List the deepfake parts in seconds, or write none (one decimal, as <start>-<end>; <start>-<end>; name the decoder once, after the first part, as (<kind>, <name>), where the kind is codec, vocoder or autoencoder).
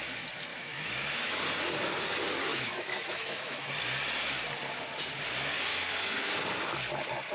0.5-1.4 (autoencoder, DAC-VAE); 2.5-3.7; 5.7-6.3